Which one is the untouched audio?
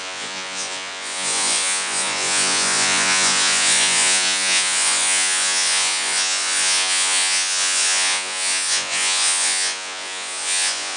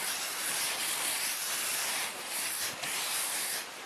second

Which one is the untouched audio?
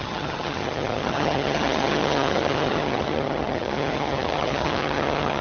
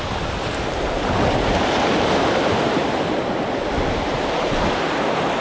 second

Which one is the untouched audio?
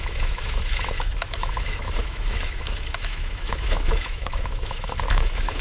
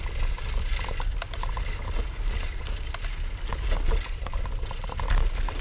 second